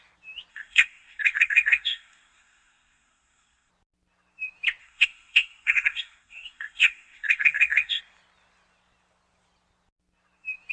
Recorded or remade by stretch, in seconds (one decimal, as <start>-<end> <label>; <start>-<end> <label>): 0.0-0.5 recorded; 0.5-3.7 remade; 3.7-4.8 recorded; 4.8-8.0 remade; 8.0-10.7 recorded